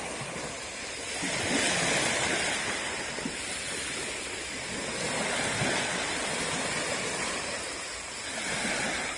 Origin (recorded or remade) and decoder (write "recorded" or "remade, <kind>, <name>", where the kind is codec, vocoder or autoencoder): recorded